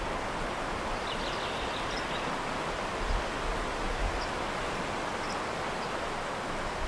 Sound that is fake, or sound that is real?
real